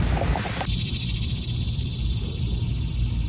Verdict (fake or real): fake